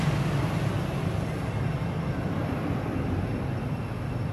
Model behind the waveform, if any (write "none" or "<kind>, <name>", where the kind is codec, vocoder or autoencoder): none